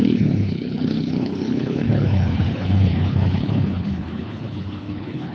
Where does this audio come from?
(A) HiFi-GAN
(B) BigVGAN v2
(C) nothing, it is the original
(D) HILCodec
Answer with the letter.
D